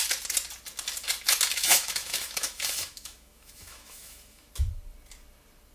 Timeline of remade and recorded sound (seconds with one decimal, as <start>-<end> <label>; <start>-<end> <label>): 0.0-1.5 recorded; 1.5-4.5 remade; 4.5-5.7 recorded